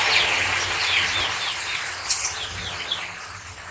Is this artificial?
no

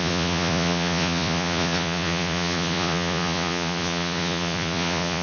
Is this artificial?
yes